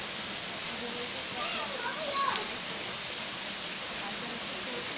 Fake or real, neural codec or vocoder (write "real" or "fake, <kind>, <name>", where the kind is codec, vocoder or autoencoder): real